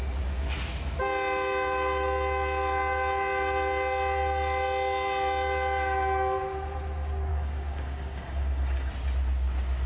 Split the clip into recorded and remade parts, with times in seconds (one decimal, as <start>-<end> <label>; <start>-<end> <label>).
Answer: 0.0-7.3 recorded; 7.3-8.9 remade; 8.9-9.9 recorded